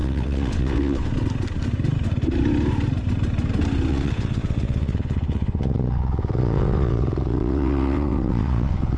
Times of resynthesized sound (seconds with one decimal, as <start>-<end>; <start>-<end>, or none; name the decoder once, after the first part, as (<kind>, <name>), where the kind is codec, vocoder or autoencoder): 0.0-1.1 (vocoder, WaveNeXt); 3.9-9.0